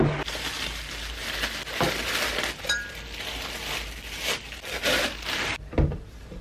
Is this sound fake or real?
fake